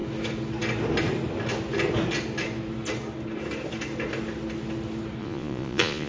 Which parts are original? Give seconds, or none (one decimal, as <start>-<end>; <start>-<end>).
0.0-5.2